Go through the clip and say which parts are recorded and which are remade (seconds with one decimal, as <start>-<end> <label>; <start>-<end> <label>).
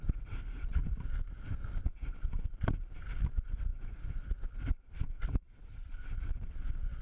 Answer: 0.0-7.0 recorded